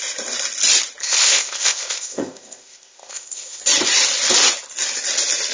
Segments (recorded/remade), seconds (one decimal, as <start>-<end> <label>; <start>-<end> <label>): 0.0-1.0 recorded; 1.0-3.6 remade; 3.6-5.5 recorded